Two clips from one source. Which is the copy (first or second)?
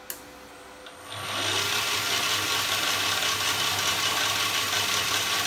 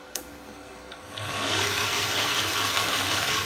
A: second